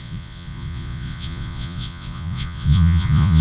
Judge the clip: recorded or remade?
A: remade